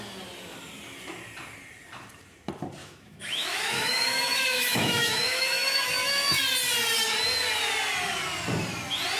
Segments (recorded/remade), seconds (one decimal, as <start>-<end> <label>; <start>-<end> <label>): 0.0-2.8 recorded; 2.8-6.4 remade; 6.4-9.2 recorded